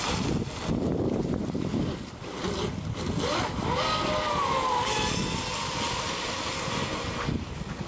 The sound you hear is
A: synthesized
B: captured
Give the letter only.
B